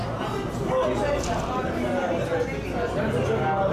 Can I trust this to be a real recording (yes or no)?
yes